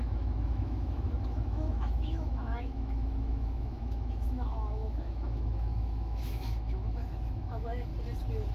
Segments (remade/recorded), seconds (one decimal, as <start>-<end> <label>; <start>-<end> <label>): 0.0-7.9 remade; 7.9-8.5 recorded